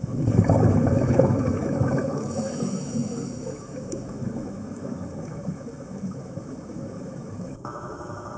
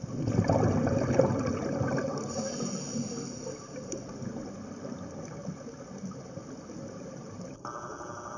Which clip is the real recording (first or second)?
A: second